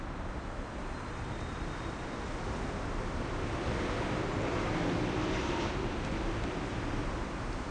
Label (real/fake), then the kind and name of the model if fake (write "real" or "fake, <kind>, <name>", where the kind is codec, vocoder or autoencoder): fake, vocoder, BigVGAN v2